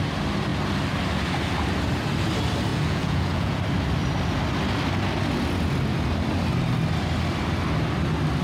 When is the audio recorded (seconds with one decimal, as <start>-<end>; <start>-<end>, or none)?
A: 0.0-2.7; 3.6-8.4